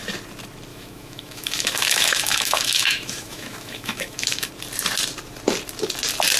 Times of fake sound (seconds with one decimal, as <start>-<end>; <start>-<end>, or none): 0.7-4.5